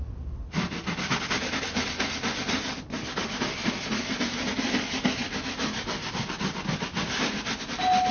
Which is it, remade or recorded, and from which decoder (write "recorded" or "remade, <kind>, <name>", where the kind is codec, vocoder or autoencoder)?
recorded